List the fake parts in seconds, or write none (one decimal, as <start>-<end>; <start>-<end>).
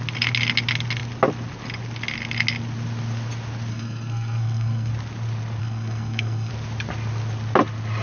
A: 3.7-4.9; 5.6-6.5